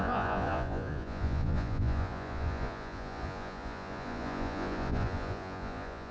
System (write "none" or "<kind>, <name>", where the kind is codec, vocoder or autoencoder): vocoder, Vocos